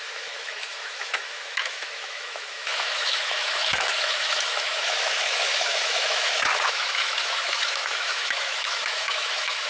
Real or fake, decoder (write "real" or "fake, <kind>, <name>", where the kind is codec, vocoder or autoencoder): fake, autoencoder, DAC-VAE